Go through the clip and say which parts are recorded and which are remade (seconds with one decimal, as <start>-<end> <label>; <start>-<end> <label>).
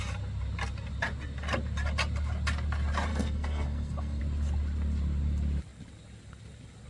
0.0-3.1 recorded; 3.1-4.2 remade; 4.2-6.9 recorded